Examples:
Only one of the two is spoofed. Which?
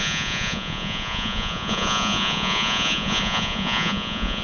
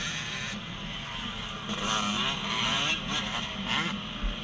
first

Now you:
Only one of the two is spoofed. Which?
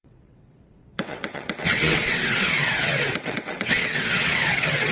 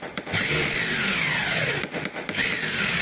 first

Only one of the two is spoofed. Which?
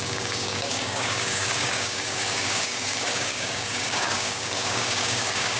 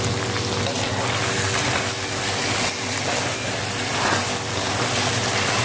first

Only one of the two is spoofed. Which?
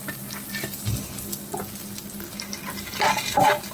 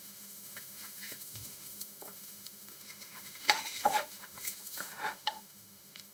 second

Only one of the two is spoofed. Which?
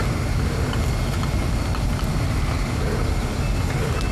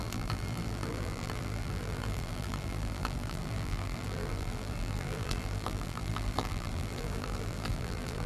second